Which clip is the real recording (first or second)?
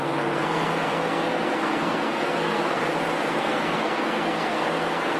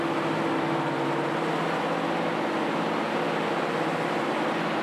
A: second